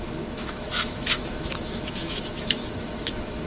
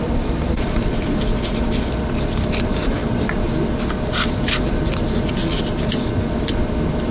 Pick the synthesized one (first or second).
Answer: first